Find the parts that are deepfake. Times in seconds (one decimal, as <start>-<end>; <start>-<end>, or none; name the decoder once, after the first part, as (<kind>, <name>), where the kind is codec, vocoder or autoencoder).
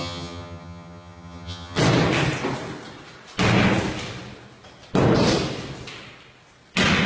0.0-1.8 (vocoder, HiFi-GAN)